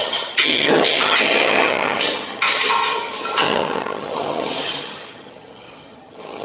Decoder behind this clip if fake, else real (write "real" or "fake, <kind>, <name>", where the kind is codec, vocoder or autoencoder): fake, vocoder, HiFi-GAN